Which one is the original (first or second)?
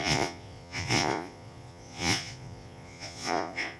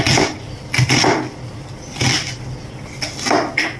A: second